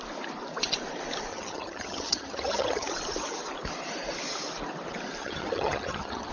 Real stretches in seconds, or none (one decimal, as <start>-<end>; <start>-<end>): 0.0-1.3; 2.9-5.2